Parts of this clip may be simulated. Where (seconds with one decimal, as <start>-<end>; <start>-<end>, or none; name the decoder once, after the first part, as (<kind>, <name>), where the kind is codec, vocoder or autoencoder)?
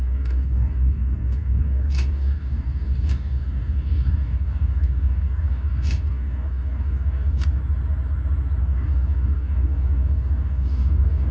0.0-7.6 (codec, DAC); 8.6-11.3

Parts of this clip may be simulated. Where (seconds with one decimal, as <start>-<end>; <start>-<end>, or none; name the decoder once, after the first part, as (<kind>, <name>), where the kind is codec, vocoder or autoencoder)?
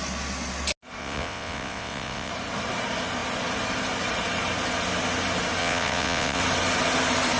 1.0-2.3 (vocoder, WaveNeXt); 5.6-6.4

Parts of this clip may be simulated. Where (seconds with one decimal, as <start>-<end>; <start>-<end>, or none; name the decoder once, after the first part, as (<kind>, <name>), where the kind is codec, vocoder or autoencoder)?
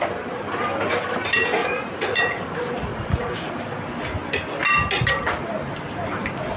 1.6-2.4 (vocoder, Vocos); 2.9-3.5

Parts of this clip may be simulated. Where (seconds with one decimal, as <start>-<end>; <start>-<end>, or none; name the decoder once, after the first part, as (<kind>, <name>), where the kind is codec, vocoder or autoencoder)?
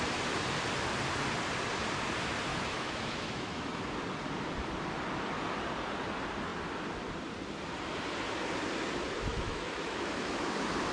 2.5-3.8 (autoencoder, DAC-VAE); 9.3-10.5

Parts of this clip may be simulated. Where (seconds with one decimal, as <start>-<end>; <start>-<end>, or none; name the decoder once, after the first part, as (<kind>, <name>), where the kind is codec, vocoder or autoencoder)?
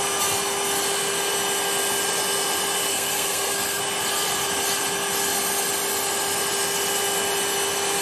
2.9-3.8 (codec, SNAC)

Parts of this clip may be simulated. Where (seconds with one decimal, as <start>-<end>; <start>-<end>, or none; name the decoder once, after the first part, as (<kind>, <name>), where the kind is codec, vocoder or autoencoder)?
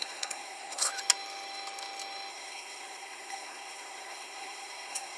0.0-0.9 (codec, SNAC); 2.3-5.2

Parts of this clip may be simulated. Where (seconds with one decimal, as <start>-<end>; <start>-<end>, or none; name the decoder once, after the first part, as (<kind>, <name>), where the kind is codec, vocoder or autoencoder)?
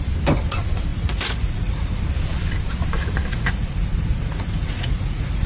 0.9-2.0 (vocoder, Vocos); 3.3-5.5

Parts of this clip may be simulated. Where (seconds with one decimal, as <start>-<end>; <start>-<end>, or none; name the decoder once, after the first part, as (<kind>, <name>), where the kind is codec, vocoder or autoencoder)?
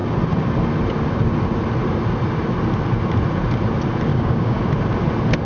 4.1-4.6 (codec, DAC)